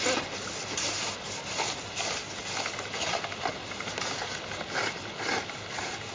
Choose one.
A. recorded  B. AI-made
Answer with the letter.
A